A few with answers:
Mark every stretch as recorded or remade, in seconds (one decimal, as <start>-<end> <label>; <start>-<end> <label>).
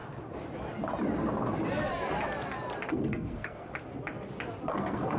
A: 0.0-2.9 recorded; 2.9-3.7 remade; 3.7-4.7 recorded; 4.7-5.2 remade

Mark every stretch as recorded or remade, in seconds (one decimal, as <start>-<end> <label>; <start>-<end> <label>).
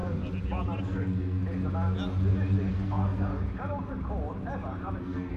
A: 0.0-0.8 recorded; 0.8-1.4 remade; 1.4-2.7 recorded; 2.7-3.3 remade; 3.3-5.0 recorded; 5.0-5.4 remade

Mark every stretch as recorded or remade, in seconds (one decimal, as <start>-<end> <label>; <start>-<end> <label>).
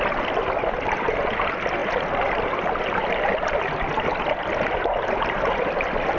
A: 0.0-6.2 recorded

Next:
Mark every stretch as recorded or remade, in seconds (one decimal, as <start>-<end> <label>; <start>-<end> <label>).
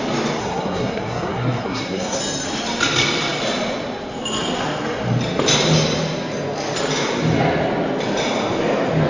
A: 0.0-0.4 recorded; 0.4-2.2 remade; 2.2-9.1 recorded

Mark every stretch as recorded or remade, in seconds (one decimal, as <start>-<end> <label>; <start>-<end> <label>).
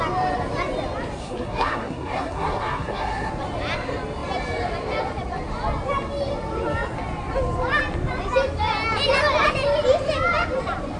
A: 0.0-1.2 recorded; 1.2-3.3 remade; 3.3-11.0 recorded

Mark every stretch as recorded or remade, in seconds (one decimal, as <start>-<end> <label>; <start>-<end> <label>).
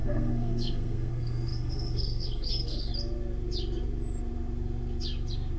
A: 0.0-2.9 remade; 2.9-5.6 recorded